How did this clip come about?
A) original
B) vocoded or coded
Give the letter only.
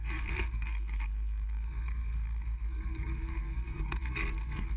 B